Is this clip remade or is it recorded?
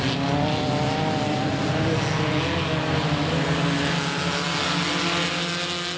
recorded